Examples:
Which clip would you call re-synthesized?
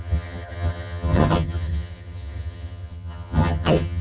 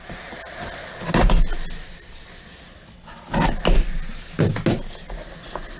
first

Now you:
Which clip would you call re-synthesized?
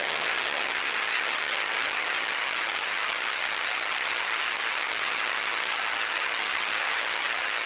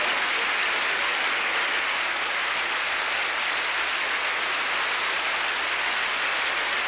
first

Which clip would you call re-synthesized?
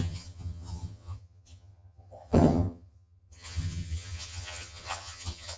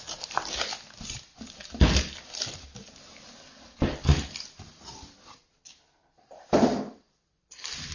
first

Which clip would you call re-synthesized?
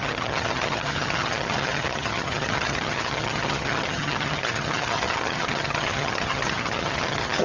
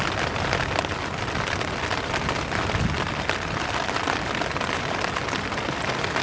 first